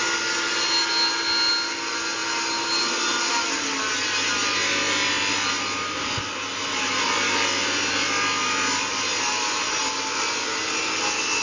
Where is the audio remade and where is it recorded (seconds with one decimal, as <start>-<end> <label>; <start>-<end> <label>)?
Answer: 0.0-6.6 recorded; 6.6-9.8 remade; 9.8-11.4 recorded